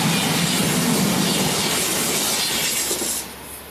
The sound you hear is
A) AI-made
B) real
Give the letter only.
B